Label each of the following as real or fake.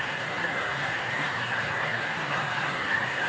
fake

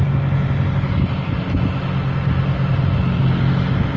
real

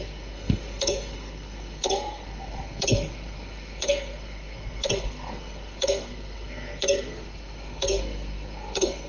fake